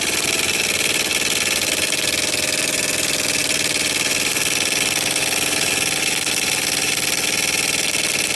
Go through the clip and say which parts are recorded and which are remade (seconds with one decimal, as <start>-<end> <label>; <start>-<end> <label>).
0.0-1.6 recorded; 1.6-2.2 remade; 2.2-3.4 recorded; 3.4-5.7 remade; 5.7-8.4 recorded

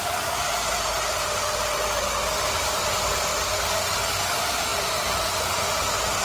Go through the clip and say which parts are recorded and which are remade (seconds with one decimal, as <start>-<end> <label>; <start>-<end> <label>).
0.0-6.2 recorded

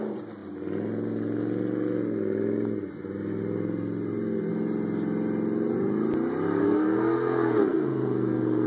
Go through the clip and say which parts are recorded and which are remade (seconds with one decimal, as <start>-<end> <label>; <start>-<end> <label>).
0.0-6.6 recorded; 6.6-8.7 remade

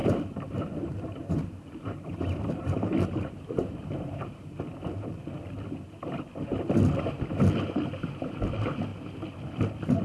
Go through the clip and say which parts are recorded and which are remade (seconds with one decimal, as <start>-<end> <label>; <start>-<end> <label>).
0.0-4.6 remade; 4.6-10.0 recorded

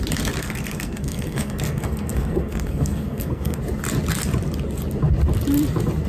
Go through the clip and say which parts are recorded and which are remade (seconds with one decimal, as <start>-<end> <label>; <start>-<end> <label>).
0.0-0.4 recorded; 0.4-3.6 remade; 3.6-6.1 recorded

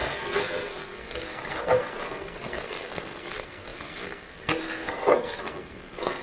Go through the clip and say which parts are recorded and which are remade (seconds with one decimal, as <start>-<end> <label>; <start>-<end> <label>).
0.0-6.2 remade

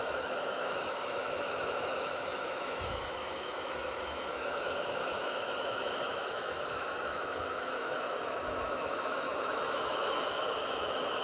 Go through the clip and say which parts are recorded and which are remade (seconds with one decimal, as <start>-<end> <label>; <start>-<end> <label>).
0.0-11.2 remade